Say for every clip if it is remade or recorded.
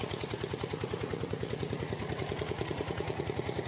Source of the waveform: remade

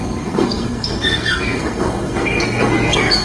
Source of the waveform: remade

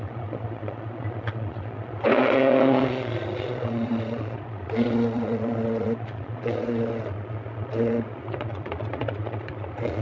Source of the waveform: remade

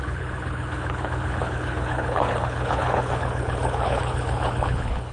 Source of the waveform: remade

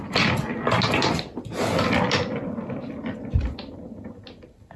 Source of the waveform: recorded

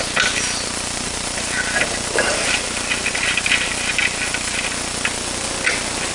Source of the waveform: recorded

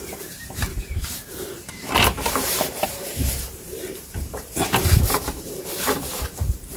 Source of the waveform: remade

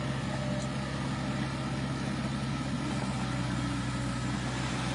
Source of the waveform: recorded